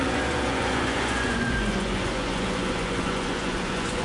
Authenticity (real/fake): fake